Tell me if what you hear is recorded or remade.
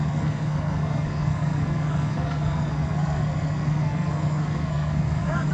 remade